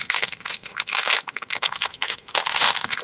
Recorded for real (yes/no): no